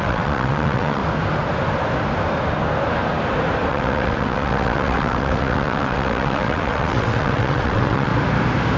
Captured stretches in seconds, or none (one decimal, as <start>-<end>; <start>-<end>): 1.0-3.7; 8.1-8.8